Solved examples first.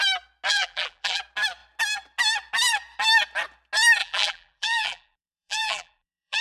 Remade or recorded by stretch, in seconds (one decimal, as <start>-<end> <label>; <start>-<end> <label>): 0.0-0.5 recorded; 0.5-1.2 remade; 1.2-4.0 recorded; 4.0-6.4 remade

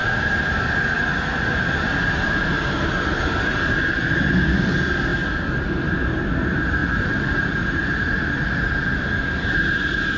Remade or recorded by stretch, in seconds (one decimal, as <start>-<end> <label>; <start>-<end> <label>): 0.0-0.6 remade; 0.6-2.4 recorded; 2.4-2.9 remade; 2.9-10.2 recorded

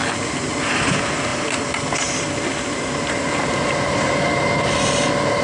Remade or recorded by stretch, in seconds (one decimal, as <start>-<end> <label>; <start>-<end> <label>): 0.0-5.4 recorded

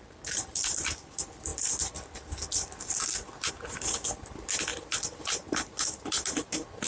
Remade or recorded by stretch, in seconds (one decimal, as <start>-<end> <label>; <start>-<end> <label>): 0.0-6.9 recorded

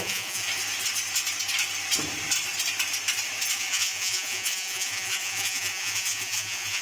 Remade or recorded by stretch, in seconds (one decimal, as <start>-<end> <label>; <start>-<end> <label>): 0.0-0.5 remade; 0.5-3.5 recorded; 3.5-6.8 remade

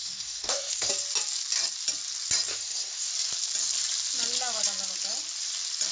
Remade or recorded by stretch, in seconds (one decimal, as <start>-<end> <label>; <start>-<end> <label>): 0.0-0.9 remade; 0.9-2.5 recorded; 2.5-3.1 remade; 3.1-5.9 recorded